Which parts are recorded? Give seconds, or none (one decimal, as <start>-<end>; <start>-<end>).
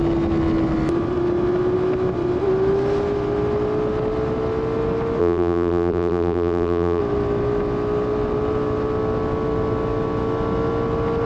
0.0-5.2; 7.0-11.3